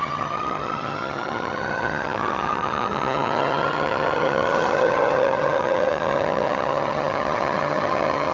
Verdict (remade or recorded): remade